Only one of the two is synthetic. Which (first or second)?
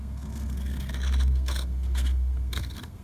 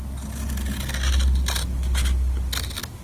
first